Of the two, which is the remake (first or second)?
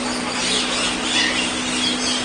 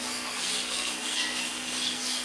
second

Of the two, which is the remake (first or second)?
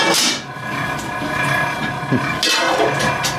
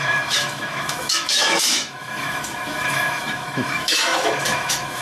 second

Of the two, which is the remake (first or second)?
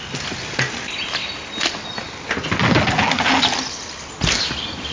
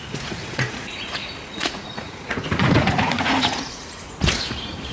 second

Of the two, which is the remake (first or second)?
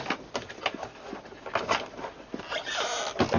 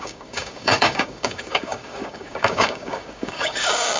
second